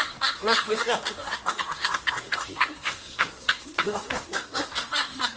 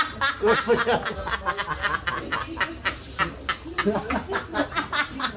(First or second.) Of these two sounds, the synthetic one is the first